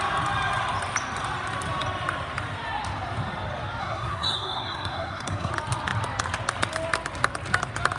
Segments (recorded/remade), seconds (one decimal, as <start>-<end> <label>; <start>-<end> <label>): 0.0-3.8 recorded; 3.8-5.5 remade; 5.5-8.0 recorded